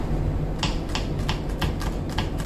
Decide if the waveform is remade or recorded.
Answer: recorded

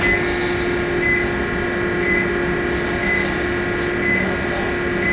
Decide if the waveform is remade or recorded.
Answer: recorded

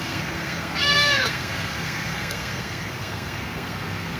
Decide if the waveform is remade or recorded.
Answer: remade